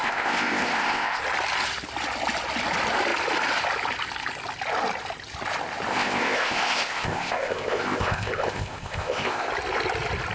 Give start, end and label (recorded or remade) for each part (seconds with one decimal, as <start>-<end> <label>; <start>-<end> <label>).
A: 0.0-1.2 remade; 1.2-5.9 recorded; 5.9-9.5 remade; 9.5-10.3 recorded